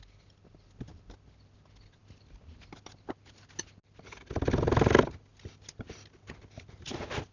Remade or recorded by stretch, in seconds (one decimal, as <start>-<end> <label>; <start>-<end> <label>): 0.0-7.3 recorded